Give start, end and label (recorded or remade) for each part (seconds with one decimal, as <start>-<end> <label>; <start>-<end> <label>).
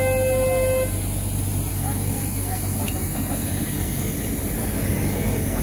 0.0-1.7 recorded; 1.7-4.1 remade; 4.1-4.6 recorded; 4.6-5.6 remade